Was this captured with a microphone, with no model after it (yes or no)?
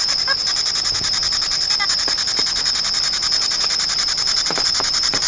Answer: yes